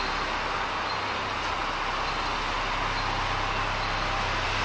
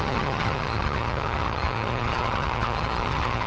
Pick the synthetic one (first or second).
second